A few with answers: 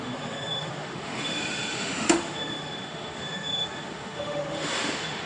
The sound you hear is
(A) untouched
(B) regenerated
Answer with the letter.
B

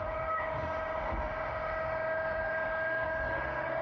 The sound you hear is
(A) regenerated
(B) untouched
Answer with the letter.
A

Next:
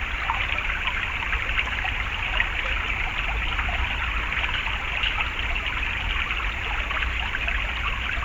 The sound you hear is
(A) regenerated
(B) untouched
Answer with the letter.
B